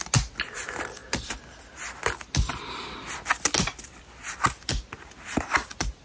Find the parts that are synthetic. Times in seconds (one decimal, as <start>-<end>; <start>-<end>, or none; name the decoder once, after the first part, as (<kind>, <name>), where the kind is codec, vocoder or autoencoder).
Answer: none